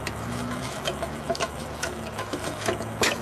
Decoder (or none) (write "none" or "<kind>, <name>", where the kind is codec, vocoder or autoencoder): autoencoder, DAC-VAE